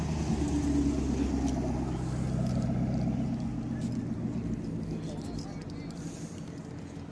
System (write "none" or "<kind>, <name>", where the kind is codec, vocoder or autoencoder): none